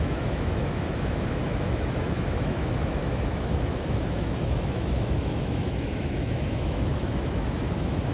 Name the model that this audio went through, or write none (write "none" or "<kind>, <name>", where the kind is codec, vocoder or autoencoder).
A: autoencoder, DAC-VAE